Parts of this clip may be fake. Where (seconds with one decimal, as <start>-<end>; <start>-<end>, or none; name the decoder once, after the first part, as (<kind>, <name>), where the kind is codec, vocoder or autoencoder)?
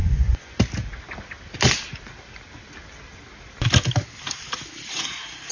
0.0-0.6 (vocoder, Vocos)